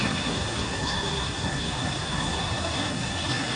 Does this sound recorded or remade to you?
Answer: remade